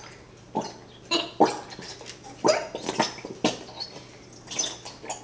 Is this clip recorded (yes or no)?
yes